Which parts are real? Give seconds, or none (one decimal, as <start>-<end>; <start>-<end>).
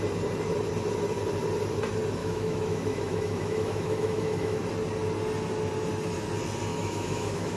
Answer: 0.0-2.2; 4.6-6.7